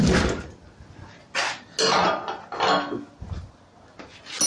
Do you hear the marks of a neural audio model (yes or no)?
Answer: no